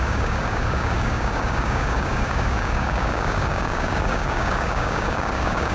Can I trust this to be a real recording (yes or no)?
no